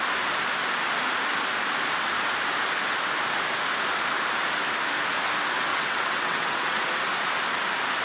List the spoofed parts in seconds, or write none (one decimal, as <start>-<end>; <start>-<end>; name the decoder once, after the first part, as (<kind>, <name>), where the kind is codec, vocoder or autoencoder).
5.7-6.8 (vocoder, WaveNeXt)